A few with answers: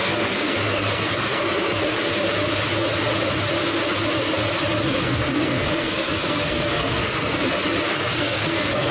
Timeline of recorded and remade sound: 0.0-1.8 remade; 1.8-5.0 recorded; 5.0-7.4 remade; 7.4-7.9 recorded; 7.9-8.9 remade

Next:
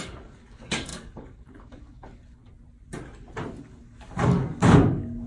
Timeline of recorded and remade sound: 0.0-2.4 remade; 2.4-3.5 recorded; 3.5-5.3 remade

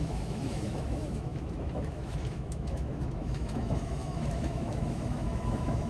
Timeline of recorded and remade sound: 0.0-5.9 remade

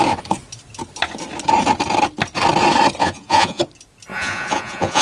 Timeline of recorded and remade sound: 0.0-3.0 recorded; 3.0-3.6 remade; 3.6-4.1 recorded; 4.1-5.0 remade

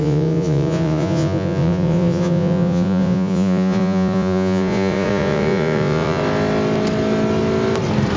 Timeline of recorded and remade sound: 0.0-6.2 remade; 6.2-8.2 recorded

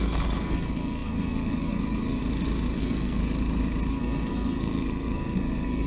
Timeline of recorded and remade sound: 0.0-2.2 remade; 2.2-2.8 recorded; 2.8-3.2 remade; 3.2-3.9 recorded; 3.9-5.9 remade